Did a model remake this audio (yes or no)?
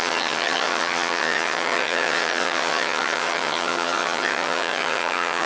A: yes